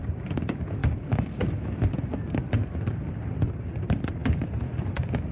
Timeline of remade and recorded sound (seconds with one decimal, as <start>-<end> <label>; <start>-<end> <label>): 0.0-5.3 recorded